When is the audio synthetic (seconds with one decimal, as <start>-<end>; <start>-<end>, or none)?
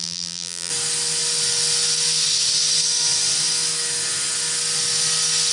0.0-0.7